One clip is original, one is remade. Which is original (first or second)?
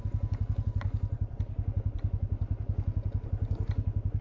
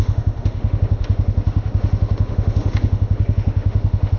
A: first